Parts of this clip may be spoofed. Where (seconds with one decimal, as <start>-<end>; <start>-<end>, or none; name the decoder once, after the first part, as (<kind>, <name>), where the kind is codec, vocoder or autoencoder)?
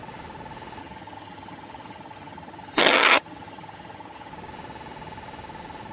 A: 0.8-4.3 (vocoder, HiFi-GAN)